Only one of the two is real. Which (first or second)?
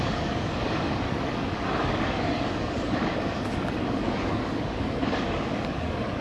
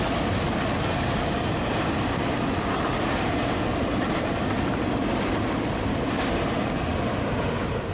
second